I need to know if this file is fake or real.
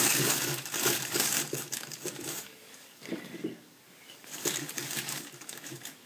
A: fake